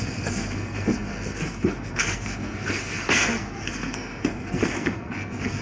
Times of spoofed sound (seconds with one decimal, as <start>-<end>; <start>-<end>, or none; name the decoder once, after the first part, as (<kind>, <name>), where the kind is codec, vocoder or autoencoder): 0.0-5.6 (codec, SNAC)

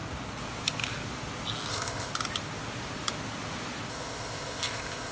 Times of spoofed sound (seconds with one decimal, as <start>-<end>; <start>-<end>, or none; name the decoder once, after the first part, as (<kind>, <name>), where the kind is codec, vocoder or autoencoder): 1.7-2.1 (codec, ZipCodec); 3.9-5.1

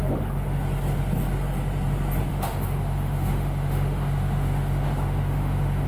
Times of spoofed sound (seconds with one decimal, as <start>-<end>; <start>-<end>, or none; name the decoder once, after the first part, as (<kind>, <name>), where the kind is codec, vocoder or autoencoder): 2.3-5.9 (autoencoder, DAC-VAE)

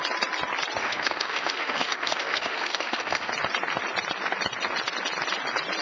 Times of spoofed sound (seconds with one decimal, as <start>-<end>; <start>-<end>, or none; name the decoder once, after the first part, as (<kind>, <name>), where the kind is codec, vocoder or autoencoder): 0.8-3.3 (autoencoder, DAC-VAE)

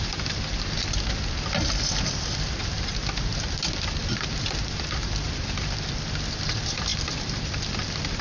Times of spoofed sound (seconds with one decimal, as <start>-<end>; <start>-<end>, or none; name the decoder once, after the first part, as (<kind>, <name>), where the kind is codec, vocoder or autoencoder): 0.0-8.2 (vocoder, BigVGAN v2)

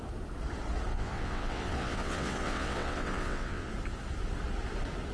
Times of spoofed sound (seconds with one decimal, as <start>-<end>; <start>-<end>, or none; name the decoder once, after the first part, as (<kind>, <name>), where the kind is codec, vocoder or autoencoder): 0.9-3.7 (vocoder, WaveNeXt)